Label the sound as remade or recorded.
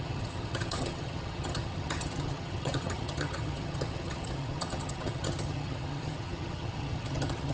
remade